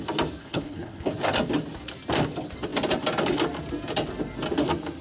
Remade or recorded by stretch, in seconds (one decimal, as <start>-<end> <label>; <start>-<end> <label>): 0.0-0.4 recorded; 0.4-1.1 remade; 1.1-5.0 recorded